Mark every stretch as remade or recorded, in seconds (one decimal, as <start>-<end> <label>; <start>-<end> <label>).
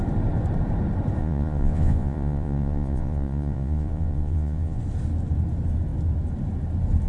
0.0-1.2 recorded; 1.2-4.8 remade; 4.8-7.1 recorded